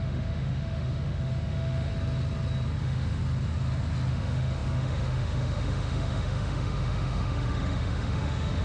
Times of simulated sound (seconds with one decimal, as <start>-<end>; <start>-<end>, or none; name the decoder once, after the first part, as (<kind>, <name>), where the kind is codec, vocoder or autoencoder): 0.0-1.9 (autoencoder, DAC-VAE); 2.8-3.2; 4.1-8.6